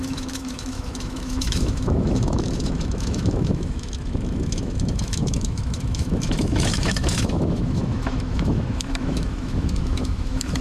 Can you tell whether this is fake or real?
fake